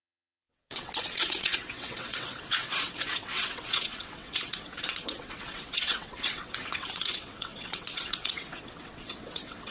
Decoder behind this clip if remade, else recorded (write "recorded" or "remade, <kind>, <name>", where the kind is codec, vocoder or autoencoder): remade, vocoder, WaveNeXt